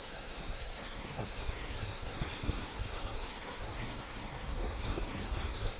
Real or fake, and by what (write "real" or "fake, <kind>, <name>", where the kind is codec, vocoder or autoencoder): fake, codec, SNAC